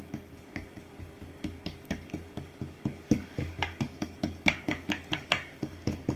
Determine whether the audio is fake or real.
fake